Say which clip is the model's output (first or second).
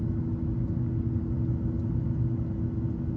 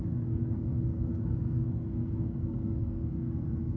second